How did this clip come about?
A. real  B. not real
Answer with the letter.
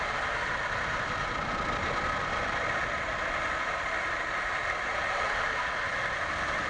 A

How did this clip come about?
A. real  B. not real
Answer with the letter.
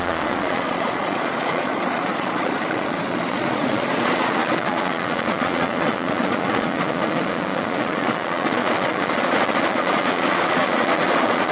B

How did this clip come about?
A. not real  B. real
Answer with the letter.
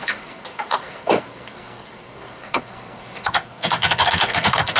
A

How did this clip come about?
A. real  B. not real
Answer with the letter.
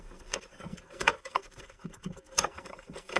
B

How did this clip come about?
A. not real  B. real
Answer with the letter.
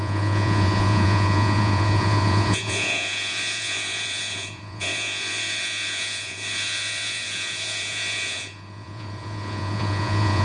A